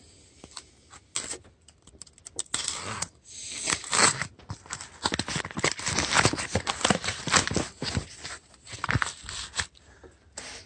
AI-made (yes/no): no